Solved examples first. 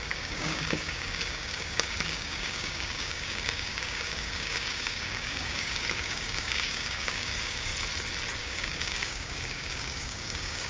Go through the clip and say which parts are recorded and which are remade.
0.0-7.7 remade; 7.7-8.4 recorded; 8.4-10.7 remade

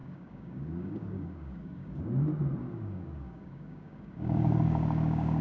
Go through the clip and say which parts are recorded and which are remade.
0.0-2.0 remade; 2.0-2.6 recorded; 2.6-5.4 remade